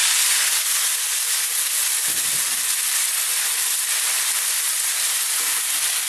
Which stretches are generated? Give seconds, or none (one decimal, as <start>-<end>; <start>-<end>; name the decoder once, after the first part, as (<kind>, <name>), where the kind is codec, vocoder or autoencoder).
none